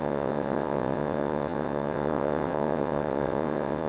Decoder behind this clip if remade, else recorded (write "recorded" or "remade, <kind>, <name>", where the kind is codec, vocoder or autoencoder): remade, vocoder, WaveNeXt